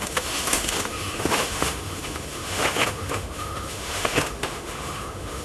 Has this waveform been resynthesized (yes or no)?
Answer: yes